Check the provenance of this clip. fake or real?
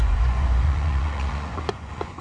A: fake